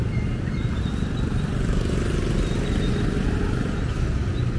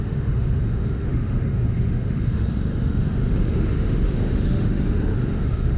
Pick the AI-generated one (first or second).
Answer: second